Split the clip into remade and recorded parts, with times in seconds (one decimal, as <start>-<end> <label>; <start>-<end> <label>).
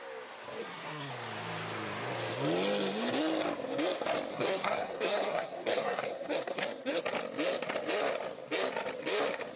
0.0-0.6 recorded; 0.6-1.1 remade; 1.1-4.3 recorded; 4.3-7.0 remade; 7.0-9.6 recorded